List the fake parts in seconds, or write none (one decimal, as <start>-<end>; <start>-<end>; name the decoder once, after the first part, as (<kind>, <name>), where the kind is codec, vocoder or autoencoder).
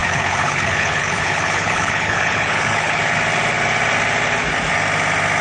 0.0-3.0 (codec, HILCodec)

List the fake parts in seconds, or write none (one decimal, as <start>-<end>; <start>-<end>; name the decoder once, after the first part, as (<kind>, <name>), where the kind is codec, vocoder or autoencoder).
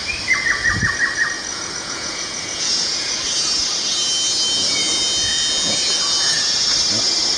1.5-3.2 (vocoder, Vocos)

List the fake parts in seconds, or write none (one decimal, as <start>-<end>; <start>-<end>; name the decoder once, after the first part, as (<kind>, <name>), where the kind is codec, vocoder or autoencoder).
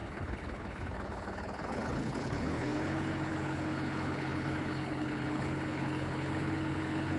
0.0-7.2 (codec, HILCodec)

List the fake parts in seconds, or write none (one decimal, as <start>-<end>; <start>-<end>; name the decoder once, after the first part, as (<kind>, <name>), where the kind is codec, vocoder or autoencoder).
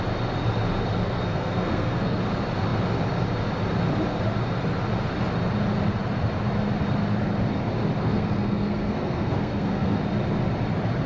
1.0-2.2 (codec, SNAC); 8.0-10.0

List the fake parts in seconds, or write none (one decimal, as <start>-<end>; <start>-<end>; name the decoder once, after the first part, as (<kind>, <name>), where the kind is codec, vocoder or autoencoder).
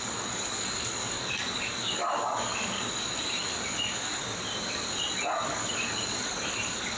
0.0-4.2 (codec, DAC); 5.5-7.0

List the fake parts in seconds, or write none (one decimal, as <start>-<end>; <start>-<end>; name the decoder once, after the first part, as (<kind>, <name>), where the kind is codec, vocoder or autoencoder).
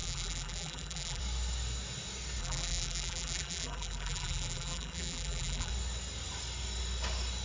0.0-1.2 (vocoder, BigVGAN v2); 2.4-5.7